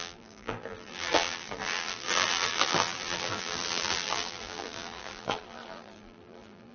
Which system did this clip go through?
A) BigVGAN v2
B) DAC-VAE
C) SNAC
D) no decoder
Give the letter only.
A